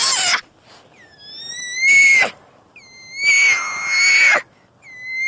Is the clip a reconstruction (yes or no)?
no